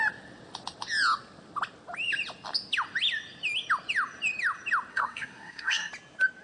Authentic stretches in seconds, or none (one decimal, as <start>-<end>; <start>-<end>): 0.0-4.9; 5.9-6.4